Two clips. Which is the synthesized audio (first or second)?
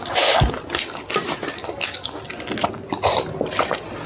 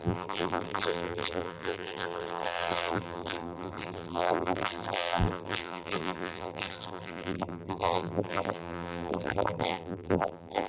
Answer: second